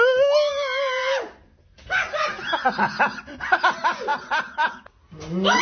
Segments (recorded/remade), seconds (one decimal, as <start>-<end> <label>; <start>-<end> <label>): 0.0-5.6 recorded